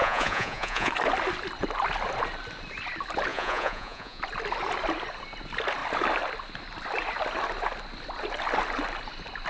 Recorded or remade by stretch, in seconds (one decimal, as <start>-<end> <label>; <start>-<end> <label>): 0.0-0.9 remade; 0.9-3.3 recorded; 3.3-4.2 remade; 4.2-9.5 recorded